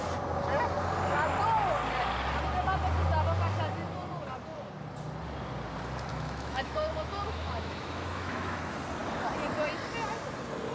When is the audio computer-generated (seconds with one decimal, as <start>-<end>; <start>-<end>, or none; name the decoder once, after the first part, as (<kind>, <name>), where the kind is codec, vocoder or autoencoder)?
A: 6.1-8.6 (autoencoder, DAC-VAE)